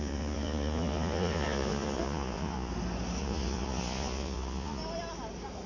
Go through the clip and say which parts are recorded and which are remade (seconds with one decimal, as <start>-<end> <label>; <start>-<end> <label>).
0.0-2.7 remade; 2.7-3.2 recorded; 3.2-4.8 remade; 4.8-5.7 recorded